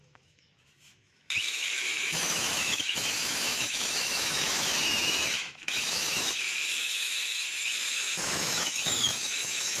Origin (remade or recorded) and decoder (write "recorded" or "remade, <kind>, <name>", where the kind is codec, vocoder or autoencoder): remade, autoencoder, DAC-VAE